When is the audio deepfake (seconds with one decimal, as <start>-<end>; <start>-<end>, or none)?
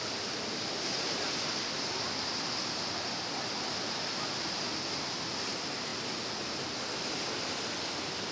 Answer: none